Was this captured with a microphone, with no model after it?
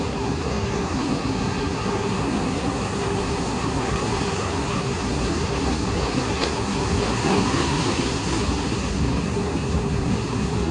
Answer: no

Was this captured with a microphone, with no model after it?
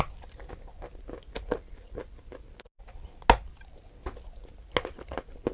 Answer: yes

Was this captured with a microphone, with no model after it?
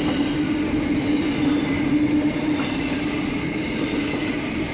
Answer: yes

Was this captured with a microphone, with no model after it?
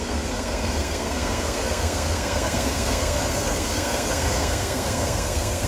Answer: no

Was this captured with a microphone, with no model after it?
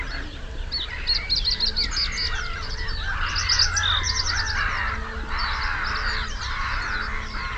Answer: yes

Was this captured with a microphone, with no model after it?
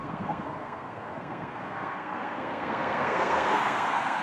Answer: no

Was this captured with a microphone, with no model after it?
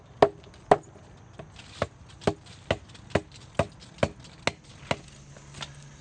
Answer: yes